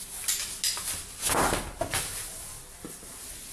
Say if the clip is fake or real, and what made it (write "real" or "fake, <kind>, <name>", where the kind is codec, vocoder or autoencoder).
real